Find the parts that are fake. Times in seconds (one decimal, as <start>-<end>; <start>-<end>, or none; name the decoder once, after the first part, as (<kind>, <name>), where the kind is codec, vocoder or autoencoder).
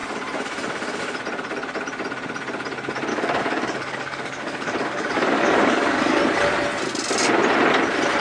3.1-6.2 (codec, DAC)